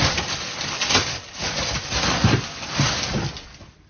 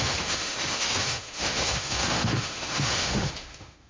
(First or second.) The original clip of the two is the first